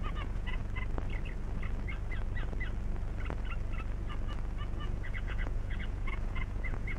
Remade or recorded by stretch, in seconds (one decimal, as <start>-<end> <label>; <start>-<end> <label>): 0.0-0.6 remade; 0.6-4.8 recorded; 4.8-7.0 remade